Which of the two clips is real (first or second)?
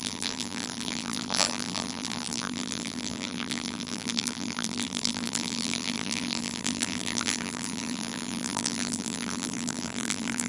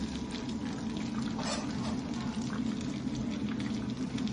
second